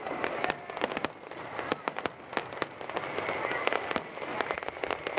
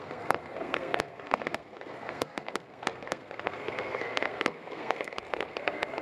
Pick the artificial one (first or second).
second